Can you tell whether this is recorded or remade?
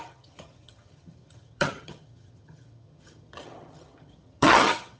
remade